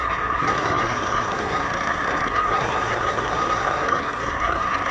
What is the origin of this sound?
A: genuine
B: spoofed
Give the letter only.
B